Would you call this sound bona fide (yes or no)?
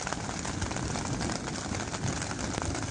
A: yes